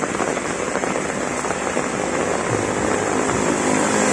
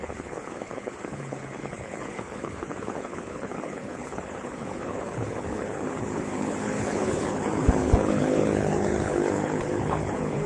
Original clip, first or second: first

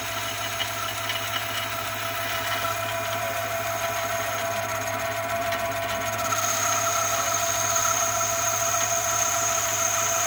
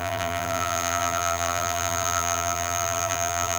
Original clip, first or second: first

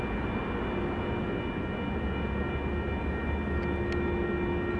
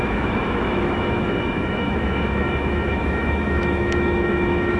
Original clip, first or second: first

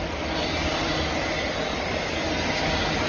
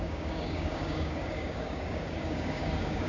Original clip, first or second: first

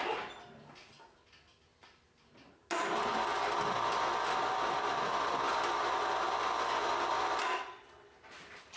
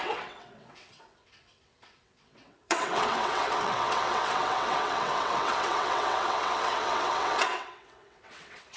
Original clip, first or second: first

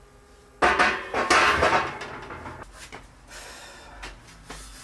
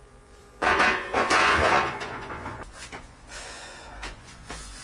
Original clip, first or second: first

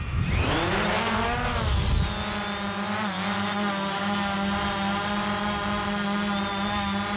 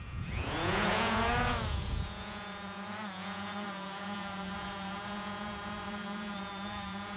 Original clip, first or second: first